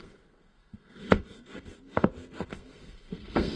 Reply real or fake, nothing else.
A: fake